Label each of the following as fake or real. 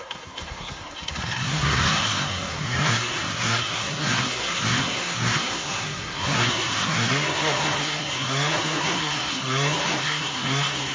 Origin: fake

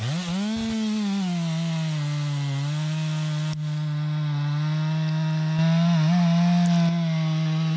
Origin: real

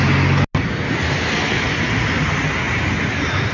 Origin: real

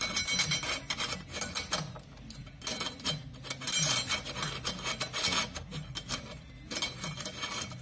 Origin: real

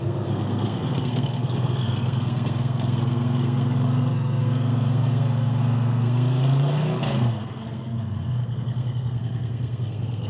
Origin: fake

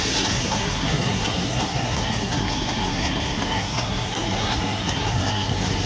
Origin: fake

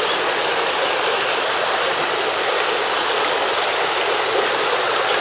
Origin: real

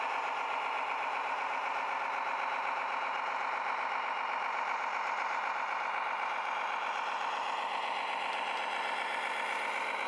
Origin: real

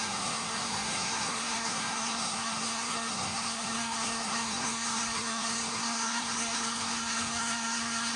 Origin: fake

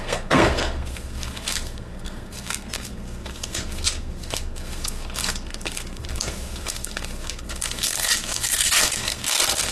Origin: fake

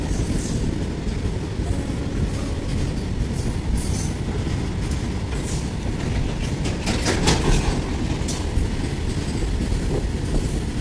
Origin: real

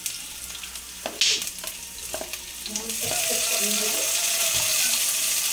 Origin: real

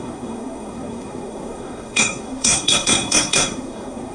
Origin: fake